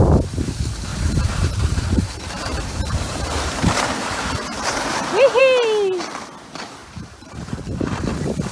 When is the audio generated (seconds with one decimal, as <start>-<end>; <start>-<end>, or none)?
0.9-5.4; 6.8-8.0